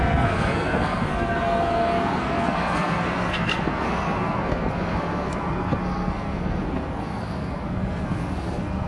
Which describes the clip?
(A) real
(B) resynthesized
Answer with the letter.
B